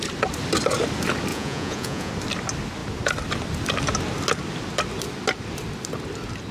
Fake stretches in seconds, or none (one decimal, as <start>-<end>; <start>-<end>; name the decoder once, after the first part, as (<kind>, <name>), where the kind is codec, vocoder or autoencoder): 1.3-2.1 (vocoder, Vocos)